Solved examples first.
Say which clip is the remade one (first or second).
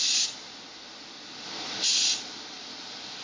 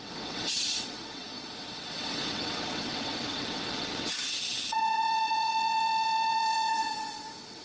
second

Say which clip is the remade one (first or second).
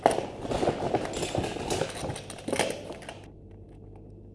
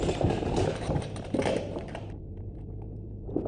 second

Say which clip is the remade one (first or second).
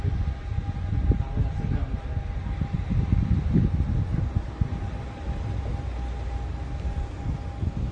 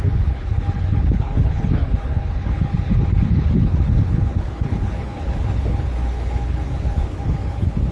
second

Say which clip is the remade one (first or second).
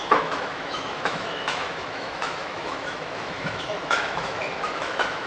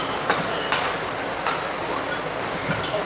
first